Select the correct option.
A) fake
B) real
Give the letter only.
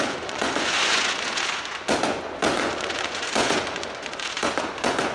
A